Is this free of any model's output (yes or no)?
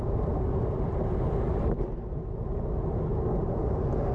yes